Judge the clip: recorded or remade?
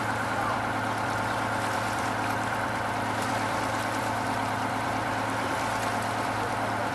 remade